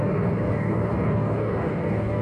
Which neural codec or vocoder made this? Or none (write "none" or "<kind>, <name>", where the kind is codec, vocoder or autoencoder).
codec, DAC